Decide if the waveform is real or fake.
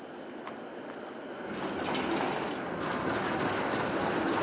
real